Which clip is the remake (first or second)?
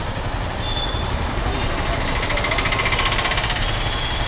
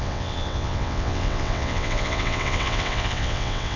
second